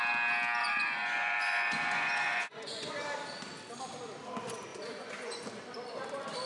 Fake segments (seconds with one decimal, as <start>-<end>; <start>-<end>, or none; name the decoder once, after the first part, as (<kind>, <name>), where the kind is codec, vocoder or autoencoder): 0.6-2.9 (vocoder, Vocos); 4.7-5.4